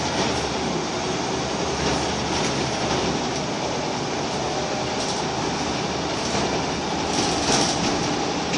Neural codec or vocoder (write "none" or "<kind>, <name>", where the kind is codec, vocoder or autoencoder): none